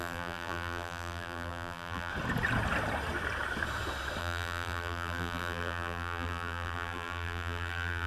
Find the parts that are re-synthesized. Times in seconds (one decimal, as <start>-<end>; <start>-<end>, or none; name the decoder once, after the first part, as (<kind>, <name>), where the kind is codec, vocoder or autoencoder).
0.0-2.1 (vocoder, BigVGAN v2); 4.2-8.1